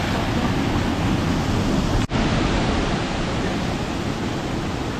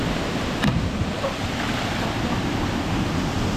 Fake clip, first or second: second